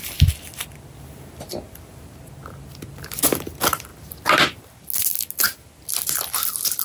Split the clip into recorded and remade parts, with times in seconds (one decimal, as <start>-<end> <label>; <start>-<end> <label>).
0.0-6.8 recorded